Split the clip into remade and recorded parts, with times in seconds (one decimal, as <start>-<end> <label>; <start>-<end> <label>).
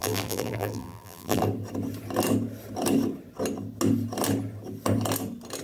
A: 0.0-1.4 remade; 1.4-5.6 recorded